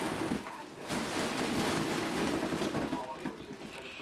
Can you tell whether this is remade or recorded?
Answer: recorded